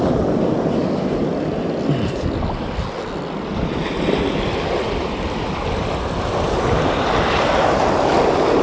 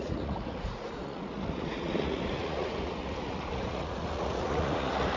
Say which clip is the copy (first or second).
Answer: second